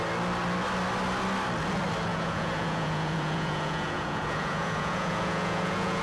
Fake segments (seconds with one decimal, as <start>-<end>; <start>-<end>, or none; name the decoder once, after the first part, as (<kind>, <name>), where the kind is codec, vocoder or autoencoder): 2.1-6.0 (vocoder, Vocos)